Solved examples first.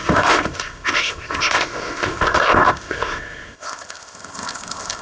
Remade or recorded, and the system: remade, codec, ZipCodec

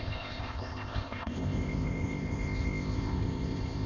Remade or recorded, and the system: remade, codec, ZipCodec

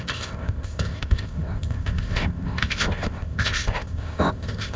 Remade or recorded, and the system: remade, codec, ZipCodec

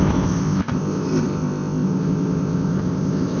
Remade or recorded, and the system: remade, codec, ZipCodec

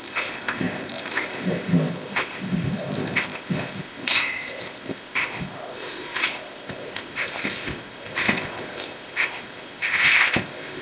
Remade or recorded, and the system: remade, codec, ZipCodec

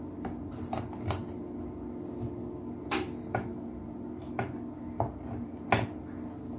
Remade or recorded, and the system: recorded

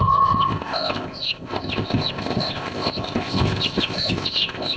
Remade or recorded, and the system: remade, codec, ZipCodec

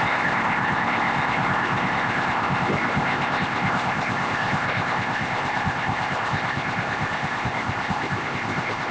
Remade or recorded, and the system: remade, codec, ZipCodec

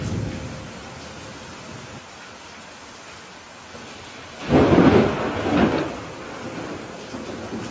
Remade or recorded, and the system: recorded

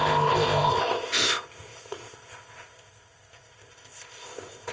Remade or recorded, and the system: remade, codec, ZipCodec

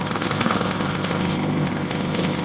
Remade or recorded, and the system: remade, codec, ZipCodec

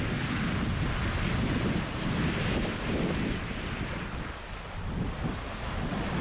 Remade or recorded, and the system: recorded